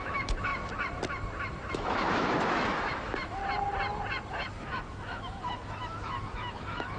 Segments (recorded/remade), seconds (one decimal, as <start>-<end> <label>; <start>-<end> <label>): 0.0-0.5 remade; 0.5-1.7 recorded; 1.7-3.4 remade; 3.4-4.3 recorded; 4.3-7.0 remade